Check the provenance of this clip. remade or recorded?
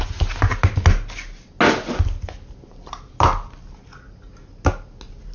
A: recorded